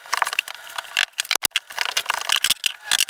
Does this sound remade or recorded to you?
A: recorded